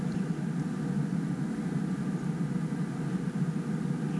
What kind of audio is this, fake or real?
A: real